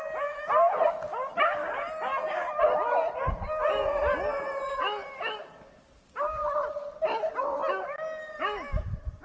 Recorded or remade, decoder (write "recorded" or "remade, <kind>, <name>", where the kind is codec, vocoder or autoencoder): recorded